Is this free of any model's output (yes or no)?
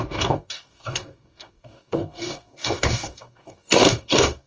no